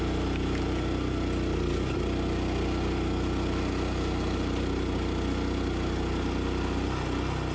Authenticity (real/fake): real